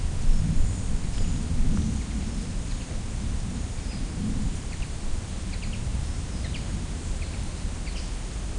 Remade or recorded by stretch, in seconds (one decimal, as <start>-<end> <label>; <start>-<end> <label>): 0.0-2.7 recorded; 2.7-5.4 remade; 5.4-5.9 recorded; 5.9-7.8 remade; 7.8-8.6 recorded